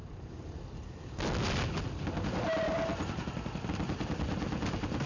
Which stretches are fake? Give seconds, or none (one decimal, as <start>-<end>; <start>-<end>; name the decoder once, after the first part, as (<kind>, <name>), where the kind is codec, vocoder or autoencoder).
none